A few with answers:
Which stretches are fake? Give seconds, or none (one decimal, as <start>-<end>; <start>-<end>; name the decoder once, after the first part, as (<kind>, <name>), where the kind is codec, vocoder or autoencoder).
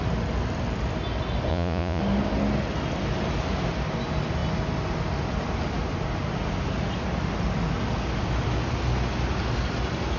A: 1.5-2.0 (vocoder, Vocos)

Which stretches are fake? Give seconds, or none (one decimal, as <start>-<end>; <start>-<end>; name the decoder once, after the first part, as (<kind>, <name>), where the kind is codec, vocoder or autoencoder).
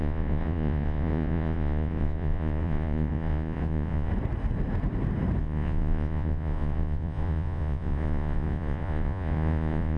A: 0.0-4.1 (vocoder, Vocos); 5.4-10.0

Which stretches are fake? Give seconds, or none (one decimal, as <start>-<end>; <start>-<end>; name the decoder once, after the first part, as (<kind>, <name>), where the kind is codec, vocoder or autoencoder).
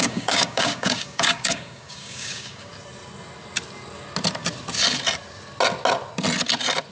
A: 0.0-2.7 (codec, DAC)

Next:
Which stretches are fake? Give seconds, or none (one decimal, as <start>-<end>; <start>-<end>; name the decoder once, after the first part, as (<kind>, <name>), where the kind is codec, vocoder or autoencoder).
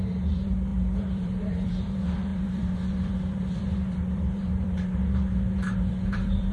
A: 0.0-6.5 (vocoder, BigVGAN v2)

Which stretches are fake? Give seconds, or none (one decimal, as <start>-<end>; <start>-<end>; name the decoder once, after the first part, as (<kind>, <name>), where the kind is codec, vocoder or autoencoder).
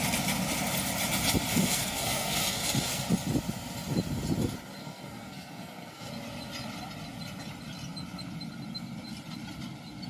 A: 1.5-3.0 (codec, SNAC); 4.8-6.1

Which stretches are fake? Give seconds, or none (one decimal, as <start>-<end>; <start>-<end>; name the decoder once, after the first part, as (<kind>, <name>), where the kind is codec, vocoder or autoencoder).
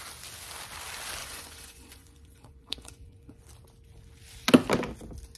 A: 1.2-3.4 (vocoder, Vocos)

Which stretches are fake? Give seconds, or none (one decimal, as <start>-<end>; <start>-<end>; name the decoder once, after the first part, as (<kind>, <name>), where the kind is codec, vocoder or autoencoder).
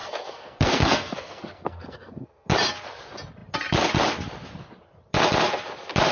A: 0.0-2.5 (codec, SNAC)